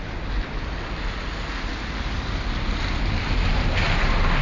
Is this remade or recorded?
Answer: recorded